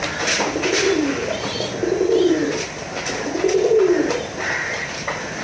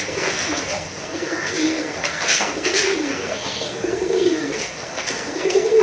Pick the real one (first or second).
first